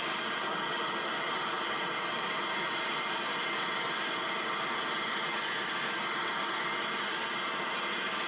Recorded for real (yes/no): yes